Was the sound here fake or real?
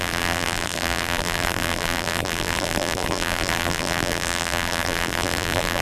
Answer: fake